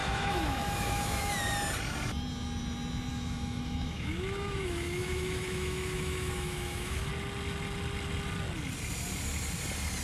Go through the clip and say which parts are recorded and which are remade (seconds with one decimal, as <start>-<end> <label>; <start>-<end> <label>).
0.0-1.3 remade; 1.3-3.1 recorded; 3.1-7.1 remade; 7.1-10.0 recorded